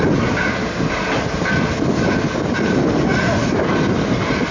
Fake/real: real